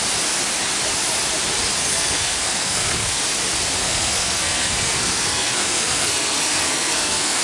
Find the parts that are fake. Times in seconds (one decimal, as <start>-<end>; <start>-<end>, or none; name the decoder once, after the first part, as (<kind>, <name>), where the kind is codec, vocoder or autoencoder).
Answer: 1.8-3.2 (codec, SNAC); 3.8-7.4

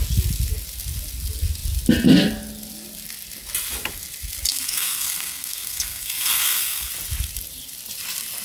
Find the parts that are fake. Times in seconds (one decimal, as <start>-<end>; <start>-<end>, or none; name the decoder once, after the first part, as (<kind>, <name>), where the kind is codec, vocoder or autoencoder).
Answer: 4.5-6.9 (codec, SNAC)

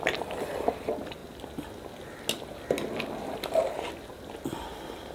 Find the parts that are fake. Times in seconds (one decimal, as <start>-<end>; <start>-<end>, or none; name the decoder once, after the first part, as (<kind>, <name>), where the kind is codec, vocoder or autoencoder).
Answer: 0.0-1.2 (vocoder, BigVGAN v2); 4.1-5.1

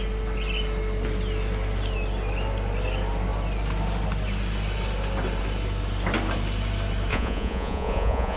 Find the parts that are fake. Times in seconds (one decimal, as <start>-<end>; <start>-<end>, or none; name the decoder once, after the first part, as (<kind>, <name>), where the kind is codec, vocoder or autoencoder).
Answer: 7.1-8.4 (vocoder, Vocos)

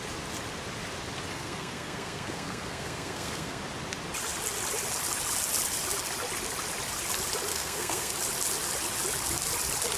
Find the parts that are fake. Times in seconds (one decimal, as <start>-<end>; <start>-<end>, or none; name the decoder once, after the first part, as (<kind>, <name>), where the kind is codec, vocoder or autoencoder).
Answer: 1.3-3.6 (codec, SNAC); 7.5-8.1